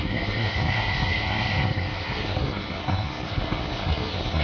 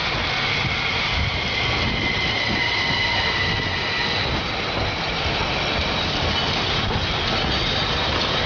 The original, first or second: second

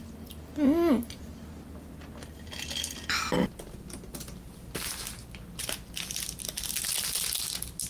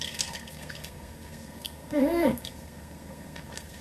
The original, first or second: first